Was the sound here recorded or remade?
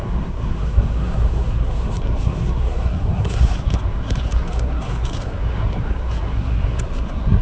remade